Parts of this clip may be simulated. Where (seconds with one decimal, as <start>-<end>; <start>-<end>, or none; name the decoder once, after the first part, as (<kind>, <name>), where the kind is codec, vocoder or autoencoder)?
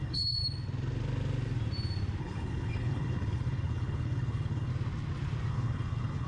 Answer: 0.0-0.4 (codec, HILCodec); 2.2-4.7; 5.5-6.3